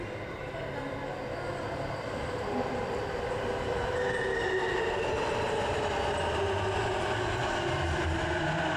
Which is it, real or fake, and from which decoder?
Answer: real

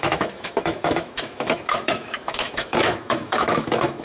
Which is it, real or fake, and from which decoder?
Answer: fake, autoencoder, DAC-VAE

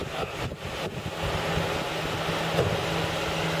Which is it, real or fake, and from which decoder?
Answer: real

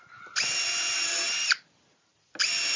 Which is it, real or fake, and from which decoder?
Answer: real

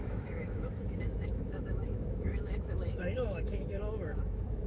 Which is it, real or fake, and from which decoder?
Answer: fake, autoencoder, DAC-VAE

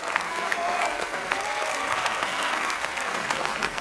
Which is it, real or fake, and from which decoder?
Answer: fake, codec, SNAC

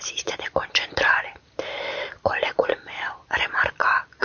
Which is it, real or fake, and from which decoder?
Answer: fake, vocoder, BigVGAN v2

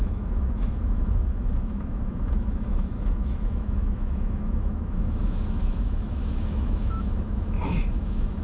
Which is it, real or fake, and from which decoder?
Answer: fake, autoencoder, DAC-VAE